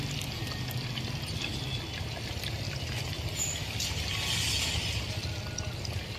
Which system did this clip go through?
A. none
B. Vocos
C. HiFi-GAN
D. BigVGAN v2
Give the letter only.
A